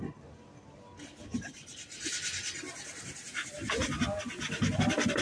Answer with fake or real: real